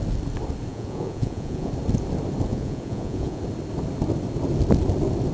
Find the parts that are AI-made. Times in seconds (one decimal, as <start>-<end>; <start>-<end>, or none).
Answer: 0.7-1.7; 2.5-3.4